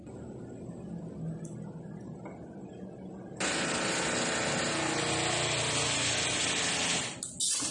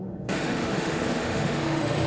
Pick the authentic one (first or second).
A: first